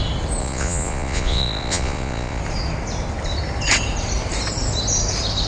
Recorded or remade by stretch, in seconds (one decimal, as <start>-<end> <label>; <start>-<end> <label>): 0.0-0.4 recorded; 0.4-2.4 remade; 2.4-5.5 recorded